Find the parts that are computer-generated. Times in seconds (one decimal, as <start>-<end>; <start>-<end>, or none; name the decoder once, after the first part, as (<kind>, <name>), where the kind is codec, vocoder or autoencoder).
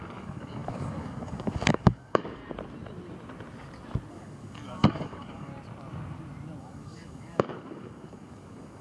0.0-2.4 (codec, DAC); 4.1-5.5; 6.6-8.8